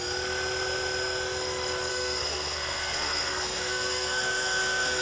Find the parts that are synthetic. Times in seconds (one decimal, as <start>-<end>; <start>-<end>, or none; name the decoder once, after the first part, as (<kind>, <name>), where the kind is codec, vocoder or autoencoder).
1.9-5.0 (codec, SNAC)